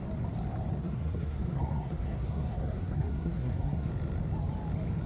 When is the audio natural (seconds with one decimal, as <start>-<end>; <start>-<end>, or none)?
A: 0.0-0.8; 3.9-5.1